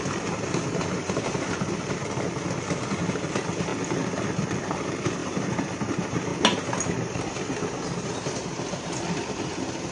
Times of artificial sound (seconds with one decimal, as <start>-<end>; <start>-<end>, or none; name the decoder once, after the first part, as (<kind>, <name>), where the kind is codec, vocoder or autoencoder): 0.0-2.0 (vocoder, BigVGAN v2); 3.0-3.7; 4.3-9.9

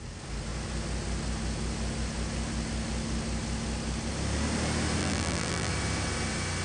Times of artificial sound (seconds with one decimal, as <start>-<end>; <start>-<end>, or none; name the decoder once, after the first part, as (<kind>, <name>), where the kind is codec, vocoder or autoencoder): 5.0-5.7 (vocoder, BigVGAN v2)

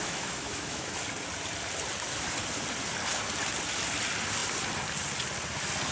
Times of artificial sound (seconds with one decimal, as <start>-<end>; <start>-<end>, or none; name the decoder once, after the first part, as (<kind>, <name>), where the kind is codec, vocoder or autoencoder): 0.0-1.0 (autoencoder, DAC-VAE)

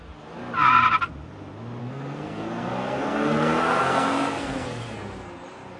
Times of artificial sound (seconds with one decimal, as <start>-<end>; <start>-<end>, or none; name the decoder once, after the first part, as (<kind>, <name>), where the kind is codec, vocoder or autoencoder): 1.8-5.3 (codec, SNAC)

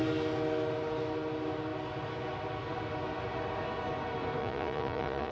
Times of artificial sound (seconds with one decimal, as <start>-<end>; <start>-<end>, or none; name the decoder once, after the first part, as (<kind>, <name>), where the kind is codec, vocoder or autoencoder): 4.4-5.3 (vocoder, Vocos)

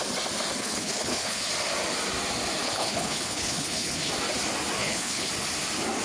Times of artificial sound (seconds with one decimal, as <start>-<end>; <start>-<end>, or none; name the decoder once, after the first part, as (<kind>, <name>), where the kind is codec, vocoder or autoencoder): 0.6-1.5 (codec, HILCodec); 2.6-4.1; 4.8-5.3

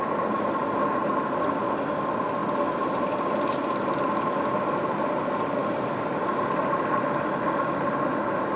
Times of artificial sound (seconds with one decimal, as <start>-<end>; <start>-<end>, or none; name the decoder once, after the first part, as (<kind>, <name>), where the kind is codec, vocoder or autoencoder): none

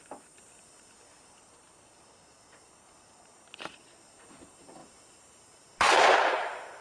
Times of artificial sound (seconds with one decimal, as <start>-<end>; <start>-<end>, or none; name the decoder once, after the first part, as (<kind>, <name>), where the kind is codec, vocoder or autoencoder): 4.8-6.8 (vocoder, BigVGAN v2)